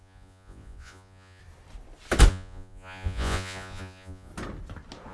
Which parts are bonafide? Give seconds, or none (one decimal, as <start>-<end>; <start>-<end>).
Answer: 1.4-2.3; 4.3-5.1